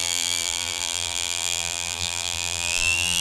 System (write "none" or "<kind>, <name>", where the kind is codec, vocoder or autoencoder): vocoder, BigVGAN v2